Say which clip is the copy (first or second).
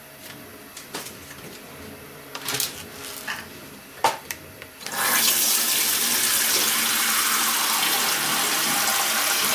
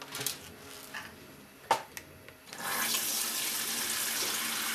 first